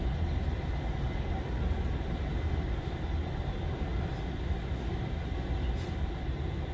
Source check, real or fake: real